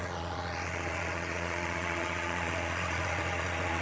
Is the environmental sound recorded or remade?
remade